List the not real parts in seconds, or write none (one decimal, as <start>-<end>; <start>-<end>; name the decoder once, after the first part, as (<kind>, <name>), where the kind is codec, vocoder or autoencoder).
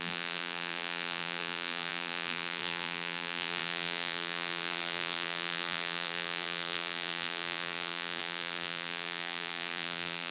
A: 0.0-10.3 (vocoder, BigVGAN v2)